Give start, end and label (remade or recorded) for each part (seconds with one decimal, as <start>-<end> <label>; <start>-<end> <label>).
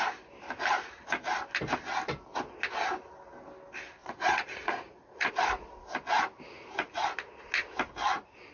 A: 0.0-4.0 recorded; 4.0-5.3 remade; 5.3-8.5 recorded